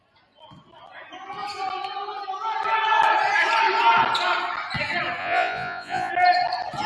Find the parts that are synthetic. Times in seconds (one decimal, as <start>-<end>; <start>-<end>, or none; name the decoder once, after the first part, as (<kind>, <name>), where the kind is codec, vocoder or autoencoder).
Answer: 5.2-6.1 (vocoder, Vocos)